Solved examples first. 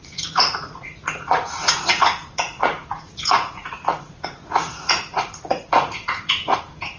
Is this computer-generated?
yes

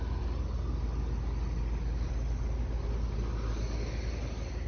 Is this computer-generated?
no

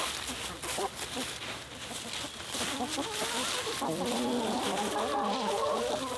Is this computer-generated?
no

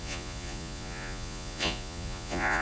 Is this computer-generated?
yes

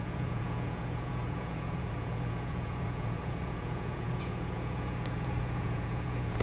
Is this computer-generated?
yes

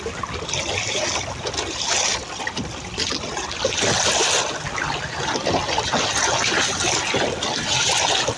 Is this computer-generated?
no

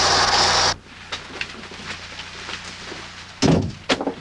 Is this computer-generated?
no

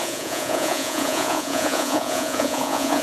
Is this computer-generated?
yes